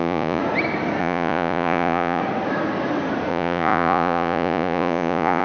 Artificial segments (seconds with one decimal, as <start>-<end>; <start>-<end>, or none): 0.0-0.4; 1.0-2.2; 3.3-5.4